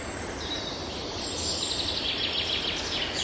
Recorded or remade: recorded